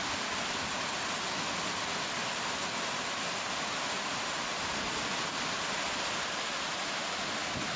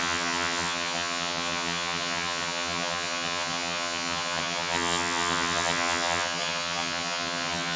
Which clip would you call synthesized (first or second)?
second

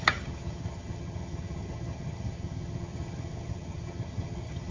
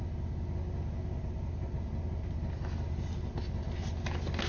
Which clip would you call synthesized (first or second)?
first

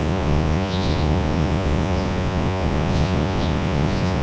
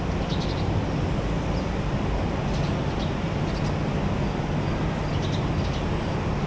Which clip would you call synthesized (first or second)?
first